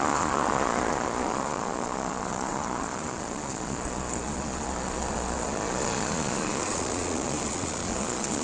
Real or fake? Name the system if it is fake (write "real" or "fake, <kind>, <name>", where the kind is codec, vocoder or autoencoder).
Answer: fake, vocoder, Vocos